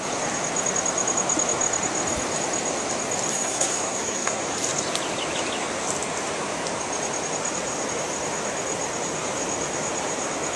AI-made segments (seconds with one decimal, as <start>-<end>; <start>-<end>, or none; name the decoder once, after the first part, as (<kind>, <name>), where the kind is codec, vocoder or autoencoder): 3.3-4.4 (codec, SNAC)